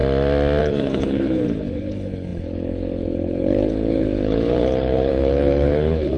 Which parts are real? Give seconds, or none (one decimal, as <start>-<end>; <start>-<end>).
0.0-0.6